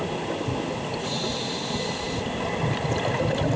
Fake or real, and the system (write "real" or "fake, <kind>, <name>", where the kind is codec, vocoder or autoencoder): real